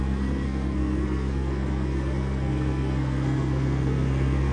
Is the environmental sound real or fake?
fake